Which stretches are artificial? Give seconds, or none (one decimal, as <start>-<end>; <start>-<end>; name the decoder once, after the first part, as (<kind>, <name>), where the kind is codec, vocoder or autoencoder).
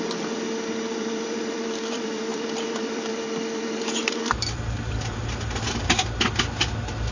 0.0-5.2 (vocoder, BigVGAN v2); 6.3-7.1